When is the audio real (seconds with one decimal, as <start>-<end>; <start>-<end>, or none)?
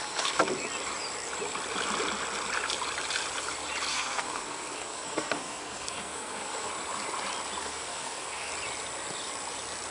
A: 0.4-3.9; 6.7-7.6; 8.5-9.9